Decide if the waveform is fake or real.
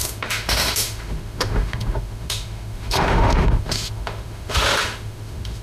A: fake